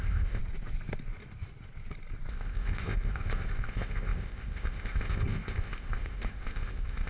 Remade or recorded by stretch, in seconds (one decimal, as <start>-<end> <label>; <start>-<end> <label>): 0.0-0.4 remade; 0.4-2.3 recorded; 2.3-7.1 remade